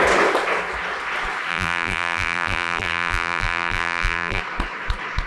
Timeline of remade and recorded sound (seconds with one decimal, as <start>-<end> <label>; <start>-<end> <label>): 0.0-1.5 recorded; 1.5-4.4 remade; 4.4-5.3 recorded